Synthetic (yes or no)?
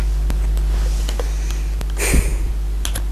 no